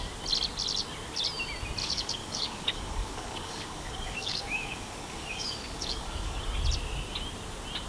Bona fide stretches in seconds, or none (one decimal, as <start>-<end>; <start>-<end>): 0.0-1.8; 6.4-7.9